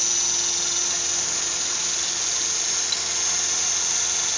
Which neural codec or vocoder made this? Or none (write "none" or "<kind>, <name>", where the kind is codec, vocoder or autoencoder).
none